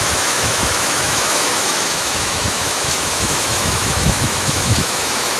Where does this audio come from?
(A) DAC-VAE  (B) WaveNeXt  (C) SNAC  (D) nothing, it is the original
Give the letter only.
A